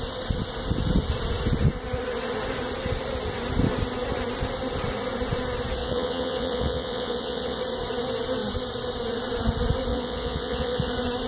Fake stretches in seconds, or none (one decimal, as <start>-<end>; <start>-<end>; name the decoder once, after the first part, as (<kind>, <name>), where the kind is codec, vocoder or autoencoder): 5.8-7.6 (vocoder, Vocos); 9.9-10.9